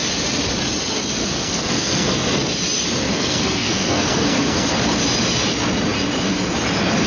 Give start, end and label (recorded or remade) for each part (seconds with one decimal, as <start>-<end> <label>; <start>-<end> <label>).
0.0-1.2 recorded; 1.2-2.4 remade; 2.4-3.1 recorded; 3.1-4.7 remade; 4.7-7.1 recorded